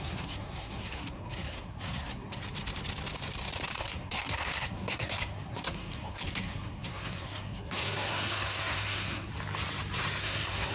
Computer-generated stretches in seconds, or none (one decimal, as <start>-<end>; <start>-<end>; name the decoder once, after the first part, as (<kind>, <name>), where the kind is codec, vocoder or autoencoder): 0.0-2.4 (codec, SNAC); 3.8-9.3; 10.2-10.7